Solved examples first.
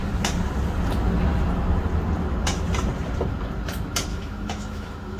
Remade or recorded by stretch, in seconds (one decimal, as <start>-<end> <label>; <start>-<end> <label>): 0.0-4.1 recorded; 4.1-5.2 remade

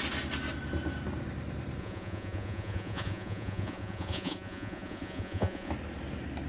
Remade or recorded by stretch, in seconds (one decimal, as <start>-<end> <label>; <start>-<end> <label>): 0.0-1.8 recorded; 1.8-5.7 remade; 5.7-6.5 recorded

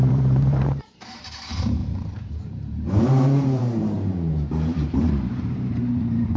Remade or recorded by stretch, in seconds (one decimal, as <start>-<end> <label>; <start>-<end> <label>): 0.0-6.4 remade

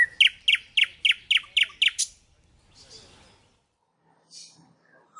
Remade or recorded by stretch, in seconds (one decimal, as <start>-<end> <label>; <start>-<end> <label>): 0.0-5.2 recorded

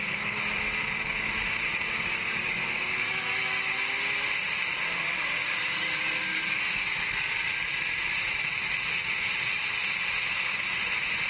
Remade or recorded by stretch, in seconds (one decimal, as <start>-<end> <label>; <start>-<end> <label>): 0.0-2.1 recorded; 2.1-3.7 remade; 3.7-5.4 recorded; 5.4-6.6 remade; 6.6-11.3 recorded

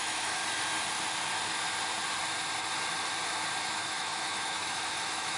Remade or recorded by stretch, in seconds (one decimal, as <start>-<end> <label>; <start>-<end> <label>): 0.0-0.4 remade; 0.4-3.6 recorded; 3.6-5.4 remade